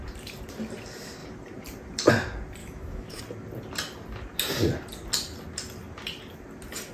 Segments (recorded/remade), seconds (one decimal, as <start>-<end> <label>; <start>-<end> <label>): 0.0-2.6 recorded; 2.6-3.2 remade; 3.2-6.9 recorded